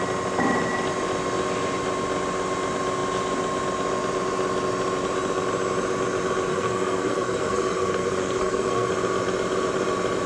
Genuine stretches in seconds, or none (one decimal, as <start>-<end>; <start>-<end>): 0.0-6.5; 8.9-10.3